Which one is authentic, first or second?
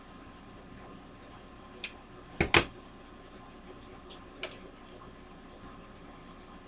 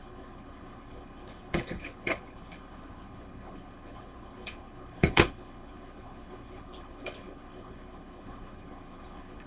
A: first